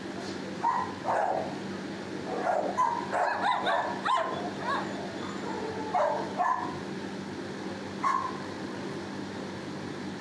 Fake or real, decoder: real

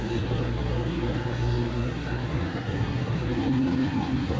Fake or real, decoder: fake, codec, SNAC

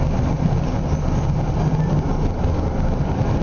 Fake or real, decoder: real